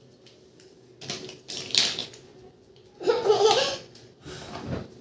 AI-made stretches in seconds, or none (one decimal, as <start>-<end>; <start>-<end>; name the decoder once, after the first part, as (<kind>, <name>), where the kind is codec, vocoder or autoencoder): 2.0-4.1 (vocoder, Vocos)